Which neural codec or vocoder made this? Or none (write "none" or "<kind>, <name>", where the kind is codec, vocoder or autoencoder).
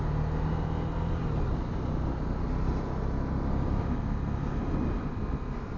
none